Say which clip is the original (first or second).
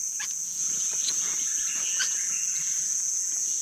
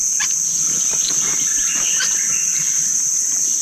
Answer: second